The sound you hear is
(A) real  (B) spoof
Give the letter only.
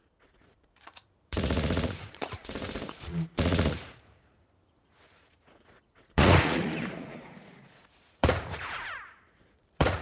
B